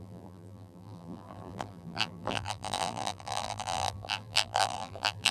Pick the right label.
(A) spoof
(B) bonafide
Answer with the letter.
A